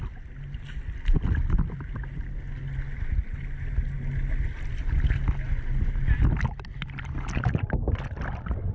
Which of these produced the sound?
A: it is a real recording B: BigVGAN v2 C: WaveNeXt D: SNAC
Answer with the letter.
A